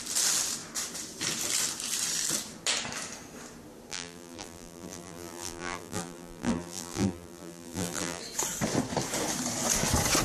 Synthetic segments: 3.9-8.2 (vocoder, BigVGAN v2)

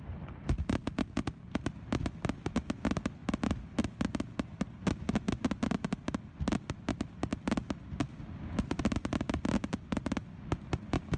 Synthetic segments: none